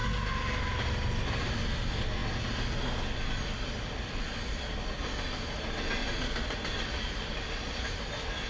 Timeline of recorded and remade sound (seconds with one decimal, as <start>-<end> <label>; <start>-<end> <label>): 0.0-8.5 recorded

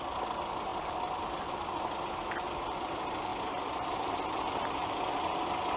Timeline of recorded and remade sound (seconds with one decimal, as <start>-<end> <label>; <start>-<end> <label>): 0.0-3.3 recorded; 3.3-5.1 remade; 5.1-5.8 recorded

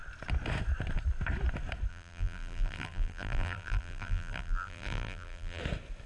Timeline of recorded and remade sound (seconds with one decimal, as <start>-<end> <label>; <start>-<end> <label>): 0.0-1.9 recorded; 1.9-5.6 remade; 5.6-6.1 recorded